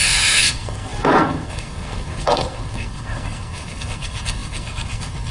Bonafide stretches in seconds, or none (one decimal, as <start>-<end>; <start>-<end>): none